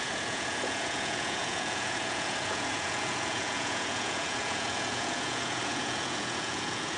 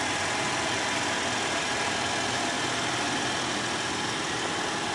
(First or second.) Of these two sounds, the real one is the second